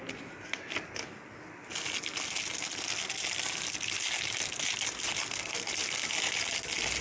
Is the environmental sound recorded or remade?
recorded